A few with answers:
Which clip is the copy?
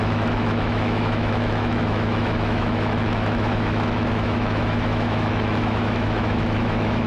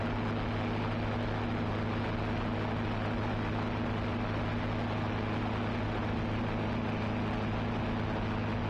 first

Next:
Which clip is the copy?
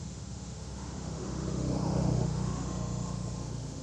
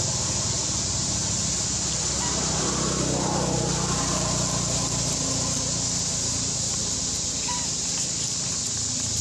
first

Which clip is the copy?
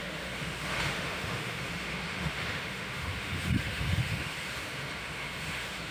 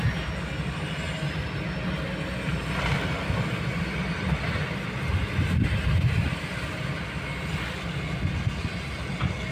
first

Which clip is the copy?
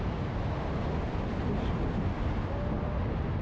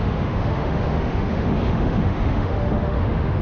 second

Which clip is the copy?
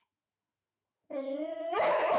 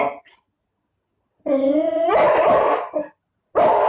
first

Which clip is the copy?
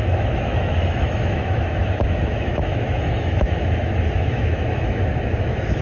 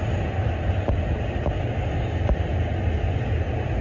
first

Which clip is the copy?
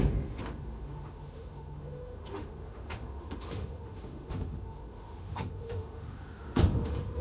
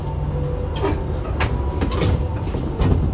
first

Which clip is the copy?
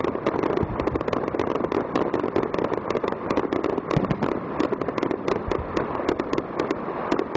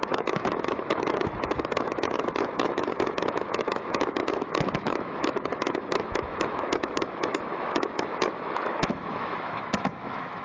second